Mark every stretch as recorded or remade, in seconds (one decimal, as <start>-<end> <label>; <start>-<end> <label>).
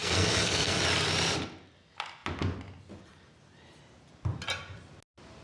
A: 0.0-0.8 remade; 0.8-5.4 recorded